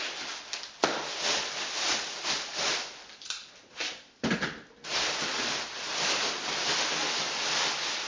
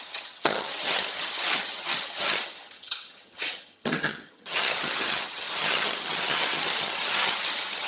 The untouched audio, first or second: first